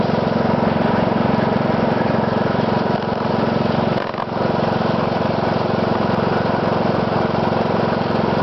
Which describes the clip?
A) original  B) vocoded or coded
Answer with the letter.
A